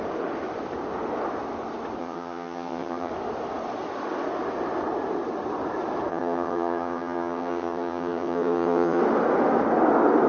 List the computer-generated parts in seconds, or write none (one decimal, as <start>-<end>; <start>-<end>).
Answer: 2.0-3.1; 6.1-9.0